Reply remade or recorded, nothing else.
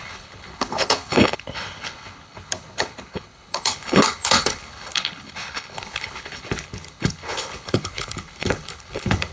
remade